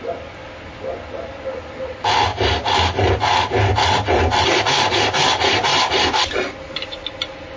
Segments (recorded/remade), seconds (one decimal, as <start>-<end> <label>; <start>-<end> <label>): 0.0-7.6 recorded